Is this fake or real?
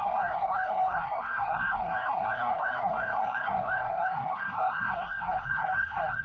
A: fake